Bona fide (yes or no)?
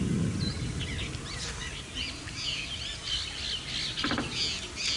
yes